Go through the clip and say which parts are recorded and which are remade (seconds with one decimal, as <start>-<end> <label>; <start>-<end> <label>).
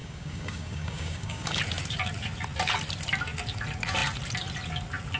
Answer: 0.0-1.6 remade; 1.6-5.2 recorded